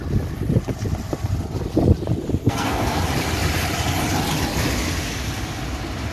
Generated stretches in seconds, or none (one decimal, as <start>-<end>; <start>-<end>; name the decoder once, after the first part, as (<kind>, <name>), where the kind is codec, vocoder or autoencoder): 2.4-3.0 (codec, SNAC)